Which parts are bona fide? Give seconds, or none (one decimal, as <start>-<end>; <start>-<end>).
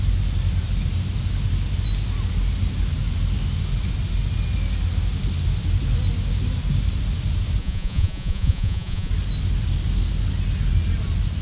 0.0-7.6; 9.1-11.4